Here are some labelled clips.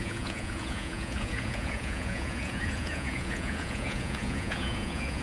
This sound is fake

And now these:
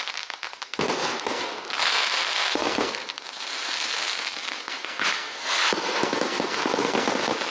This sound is fake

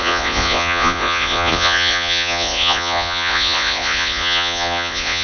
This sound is fake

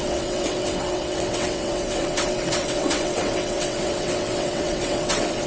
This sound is fake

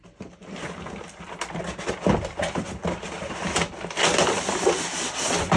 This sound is real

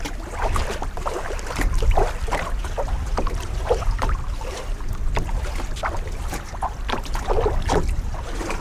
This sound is real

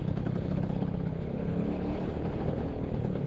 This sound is fake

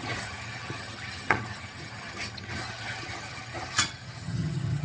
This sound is fake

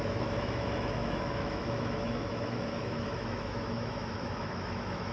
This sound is fake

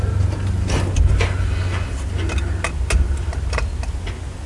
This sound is real